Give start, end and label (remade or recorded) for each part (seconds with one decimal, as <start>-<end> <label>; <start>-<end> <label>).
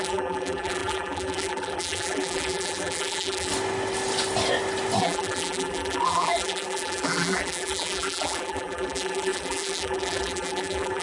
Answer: 0.0-3.5 remade; 3.5-5.0 recorded; 5.0-11.0 remade